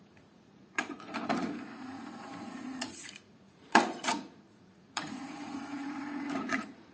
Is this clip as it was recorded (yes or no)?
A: no